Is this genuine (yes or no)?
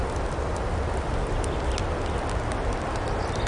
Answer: yes